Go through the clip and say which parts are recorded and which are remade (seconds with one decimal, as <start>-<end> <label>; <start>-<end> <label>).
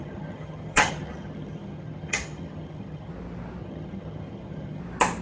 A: 0.0-3.1 remade; 3.1-3.6 recorded; 3.6-4.8 remade; 4.8-5.2 recorded